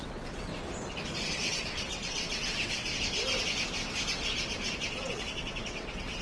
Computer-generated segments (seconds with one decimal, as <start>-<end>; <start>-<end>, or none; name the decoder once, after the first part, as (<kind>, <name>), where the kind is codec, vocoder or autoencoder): 0.0-0.5 (vocoder, WaveNeXt); 1.3-2.9; 5.0-6.2